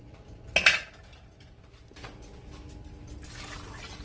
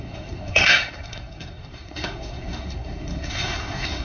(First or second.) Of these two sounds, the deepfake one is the second